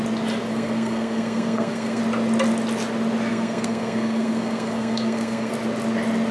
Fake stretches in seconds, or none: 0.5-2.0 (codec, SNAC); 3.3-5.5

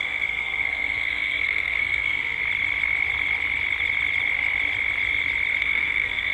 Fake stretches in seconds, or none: 0.0-2.4 (codec, SNAC); 5.6-6.3

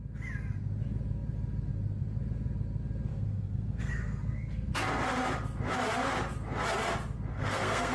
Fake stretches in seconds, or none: 3.1-4.7 (codec, SNAC); 7.3-7.9

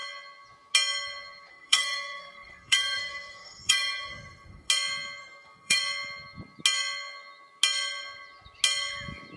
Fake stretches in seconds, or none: 1.5-4.7 (codec, SNAC); 5.2-5.8

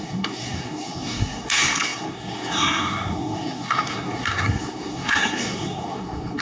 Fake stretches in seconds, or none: 0.0-6.4 (codec, SNAC)

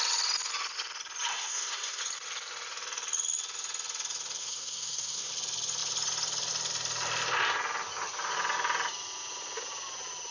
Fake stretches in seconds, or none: 1.3-2.0 (codec, SNAC); 4.4-5.3

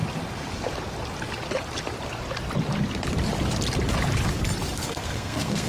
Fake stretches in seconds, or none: 4.8-5.7 (codec, SNAC)

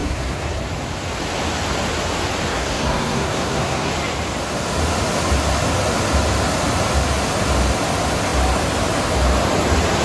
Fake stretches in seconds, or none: 0.0-0.6 (codec, SNAC); 2.5-3.9